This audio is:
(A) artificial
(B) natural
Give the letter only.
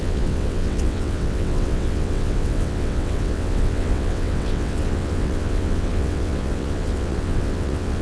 A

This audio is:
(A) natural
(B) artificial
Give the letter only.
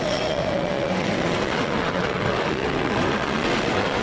B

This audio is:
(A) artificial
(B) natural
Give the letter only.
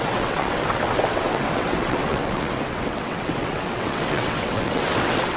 A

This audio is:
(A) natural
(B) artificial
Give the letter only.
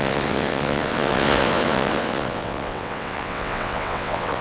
B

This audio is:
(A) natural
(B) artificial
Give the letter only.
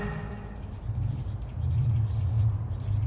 A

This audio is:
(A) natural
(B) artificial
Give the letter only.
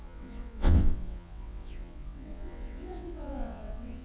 B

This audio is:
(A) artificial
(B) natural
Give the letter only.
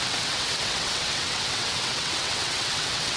A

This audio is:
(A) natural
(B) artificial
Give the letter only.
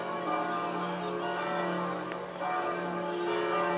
A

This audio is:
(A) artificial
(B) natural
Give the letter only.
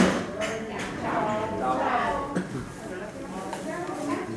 B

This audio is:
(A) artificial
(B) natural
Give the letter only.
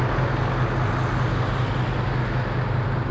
B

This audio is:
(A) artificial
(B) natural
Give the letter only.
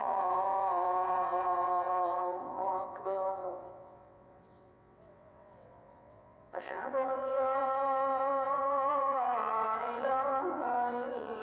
A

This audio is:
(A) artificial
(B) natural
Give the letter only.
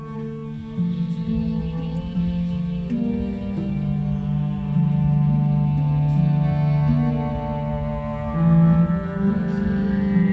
B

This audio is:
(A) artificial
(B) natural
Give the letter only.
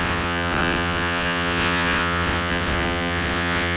A